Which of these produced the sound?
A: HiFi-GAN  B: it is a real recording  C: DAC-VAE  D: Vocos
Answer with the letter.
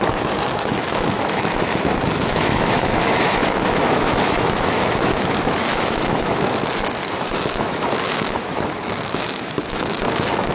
C